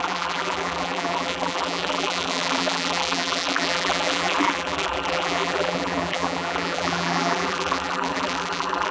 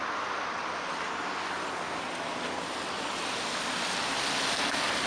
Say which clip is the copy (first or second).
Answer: first